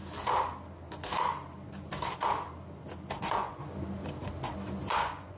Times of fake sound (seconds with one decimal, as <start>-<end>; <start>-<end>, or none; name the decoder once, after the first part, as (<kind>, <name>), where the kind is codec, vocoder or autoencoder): 3.2-3.6 (vocoder, Vocos); 4.9-5.4